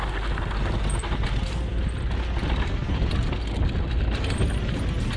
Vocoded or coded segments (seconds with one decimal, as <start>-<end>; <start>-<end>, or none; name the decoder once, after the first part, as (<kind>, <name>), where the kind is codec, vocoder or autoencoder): none

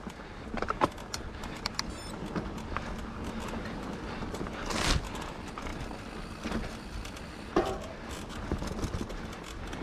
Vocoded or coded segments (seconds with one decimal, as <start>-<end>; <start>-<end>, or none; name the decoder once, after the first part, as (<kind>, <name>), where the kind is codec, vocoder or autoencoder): none

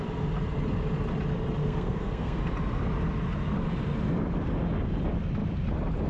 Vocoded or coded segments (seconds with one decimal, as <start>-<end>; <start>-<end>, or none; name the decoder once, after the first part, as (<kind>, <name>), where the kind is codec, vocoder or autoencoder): 1.6-2.4 (codec, SNAC)